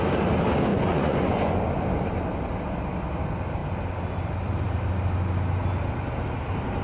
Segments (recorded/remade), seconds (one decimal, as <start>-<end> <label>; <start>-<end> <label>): 0.0-0.7 recorded; 0.7-1.6 remade; 1.6-6.8 recorded